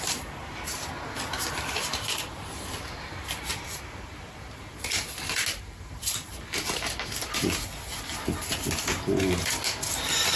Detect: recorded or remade recorded